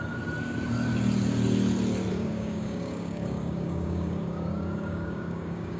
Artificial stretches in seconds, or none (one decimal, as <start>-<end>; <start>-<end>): 2.1-5.8